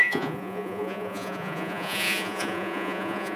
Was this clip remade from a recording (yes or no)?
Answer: yes